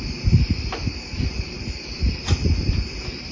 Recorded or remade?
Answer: recorded